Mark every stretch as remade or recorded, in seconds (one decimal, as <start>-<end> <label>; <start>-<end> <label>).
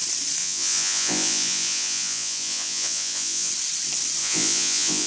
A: 0.0-0.4 recorded; 0.4-3.5 remade; 3.5-4.2 recorded; 4.2-5.1 remade